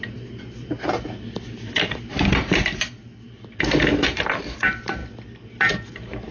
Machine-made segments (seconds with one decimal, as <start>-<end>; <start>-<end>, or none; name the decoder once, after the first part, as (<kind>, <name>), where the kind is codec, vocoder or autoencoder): 0.0-5.0 (vocoder, BigVGAN v2); 5.7-6.3

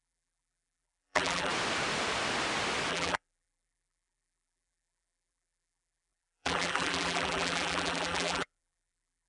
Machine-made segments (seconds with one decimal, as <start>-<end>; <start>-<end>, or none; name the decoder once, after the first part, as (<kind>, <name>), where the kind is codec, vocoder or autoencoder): 0.0-1.5 (vocoder, BigVGAN v2); 2.9-9.3

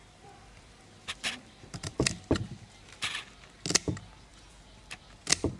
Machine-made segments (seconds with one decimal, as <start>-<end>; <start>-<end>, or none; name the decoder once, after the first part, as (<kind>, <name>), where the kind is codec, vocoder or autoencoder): 0.0-2.8 (vocoder, BigVGAN v2)

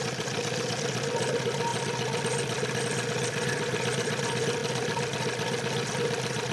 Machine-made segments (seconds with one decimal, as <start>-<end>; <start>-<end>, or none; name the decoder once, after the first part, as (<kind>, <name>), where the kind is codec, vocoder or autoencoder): none

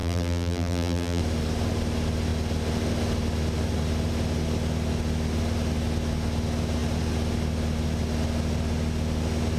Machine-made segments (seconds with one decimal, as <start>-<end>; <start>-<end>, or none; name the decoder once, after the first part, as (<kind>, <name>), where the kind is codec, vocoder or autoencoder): 0.0-1.2 (vocoder, BigVGAN v2)

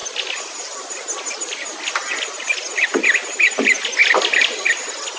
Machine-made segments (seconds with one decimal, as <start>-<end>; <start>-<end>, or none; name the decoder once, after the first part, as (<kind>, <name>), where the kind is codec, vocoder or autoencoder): 4.0-5.2 (vocoder, BigVGAN v2)

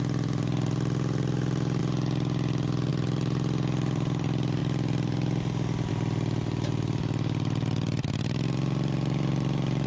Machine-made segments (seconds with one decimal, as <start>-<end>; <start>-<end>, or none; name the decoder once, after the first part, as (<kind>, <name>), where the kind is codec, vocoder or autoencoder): 0.0-1.8 (vocoder, BigVGAN v2); 2.9-9.9

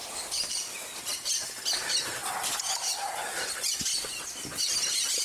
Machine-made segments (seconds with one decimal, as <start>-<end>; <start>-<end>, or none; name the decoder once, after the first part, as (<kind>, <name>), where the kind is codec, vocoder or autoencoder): 0.0-1.0 (vocoder, BigVGAN v2)